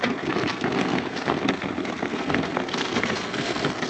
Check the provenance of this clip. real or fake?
fake